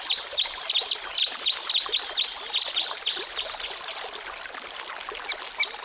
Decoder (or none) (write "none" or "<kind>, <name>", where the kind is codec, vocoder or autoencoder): none